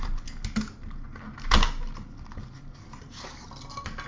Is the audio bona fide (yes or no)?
yes